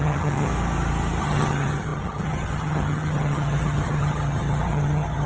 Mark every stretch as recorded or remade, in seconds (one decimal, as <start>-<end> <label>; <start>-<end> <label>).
0.0-0.5 remade; 0.5-1.2 recorded; 1.2-5.3 remade